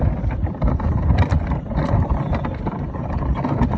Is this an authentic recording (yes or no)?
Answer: no